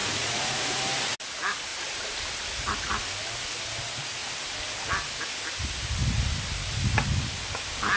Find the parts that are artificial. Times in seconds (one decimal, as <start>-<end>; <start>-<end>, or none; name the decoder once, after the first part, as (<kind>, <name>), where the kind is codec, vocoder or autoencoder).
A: 0.0-0.8 (vocoder, Vocos)